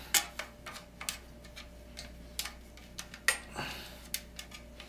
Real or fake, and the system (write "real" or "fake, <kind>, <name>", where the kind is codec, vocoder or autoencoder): real